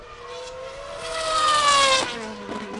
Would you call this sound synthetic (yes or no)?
no